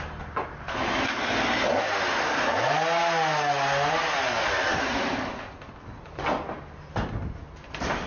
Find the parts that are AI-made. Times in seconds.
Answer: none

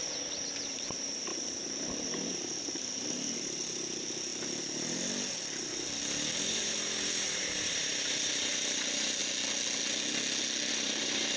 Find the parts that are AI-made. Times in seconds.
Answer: 0.0-4.3 (vocoder, BigVGAN v2); 6.4-9.2; 10.7-11.4

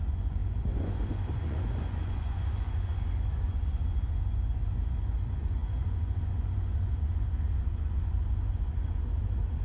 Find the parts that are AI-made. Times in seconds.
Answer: 0.0-9.6 (vocoder, Vocos)